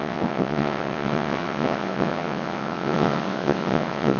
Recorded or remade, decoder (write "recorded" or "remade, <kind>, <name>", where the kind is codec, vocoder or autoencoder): remade, vocoder, WaveNeXt